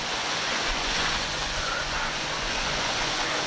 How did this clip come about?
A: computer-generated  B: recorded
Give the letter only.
A